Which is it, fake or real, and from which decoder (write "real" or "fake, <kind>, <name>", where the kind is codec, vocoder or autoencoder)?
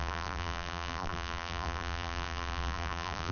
fake, vocoder, BigVGAN v2